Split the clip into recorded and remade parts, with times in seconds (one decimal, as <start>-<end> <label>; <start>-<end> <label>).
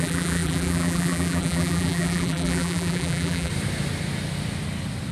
0.0-3.5 remade; 3.5-5.1 recorded